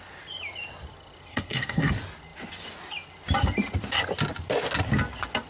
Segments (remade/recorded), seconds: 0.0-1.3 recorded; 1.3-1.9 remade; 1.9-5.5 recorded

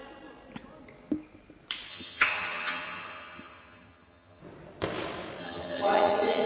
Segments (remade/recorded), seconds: 0.0-1.9 recorded; 1.9-4.4 remade; 4.4-5.4 recorded; 5.4-6.5 remade

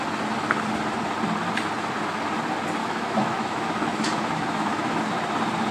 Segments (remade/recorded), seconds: 0.0-2.8 recorded; 2.8-5.0 remade; 5.0-5.7 recorded

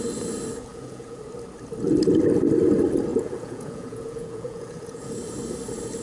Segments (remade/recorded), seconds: 0.0-0.7 recorded; 0.7-1.2 remade; 1.2-3.1 recorded; 3.1-5.1 remade; 5.1-6.0 recorded

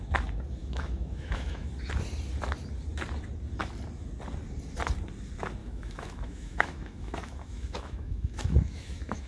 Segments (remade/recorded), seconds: 0.0-0.6 recorded; 0.6-1.7 remade; 1.7-5.6 recorded; 5.6-9.3 remade